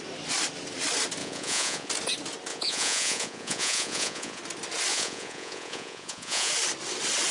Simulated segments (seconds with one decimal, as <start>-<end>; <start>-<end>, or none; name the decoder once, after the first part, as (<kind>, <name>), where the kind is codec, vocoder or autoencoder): 1.2-1.9 (vocoder, Vocos); 2.5-4.4; 4.9-6.5